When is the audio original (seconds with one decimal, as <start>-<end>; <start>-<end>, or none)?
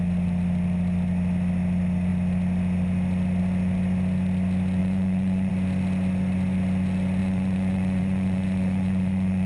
0.0-4.8; 5.5-7.2